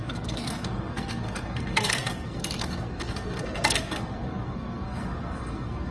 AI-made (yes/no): yes